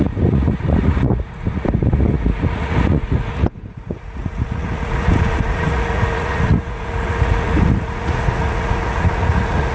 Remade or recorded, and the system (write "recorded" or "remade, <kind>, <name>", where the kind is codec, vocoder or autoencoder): remade, vocoder, Vocos